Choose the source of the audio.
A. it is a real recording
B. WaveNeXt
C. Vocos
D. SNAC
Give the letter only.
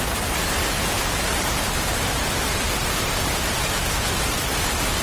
A